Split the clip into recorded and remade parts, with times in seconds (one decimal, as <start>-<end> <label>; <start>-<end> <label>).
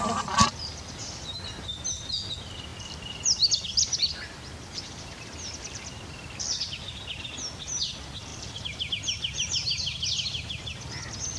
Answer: 0.0-2.7 recorded; 2.7-7.0 remade; 7.0-8.3 recorded; 8.3-8.9 remade; 8.9-11.4 recorded